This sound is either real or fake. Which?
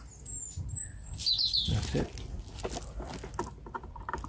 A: real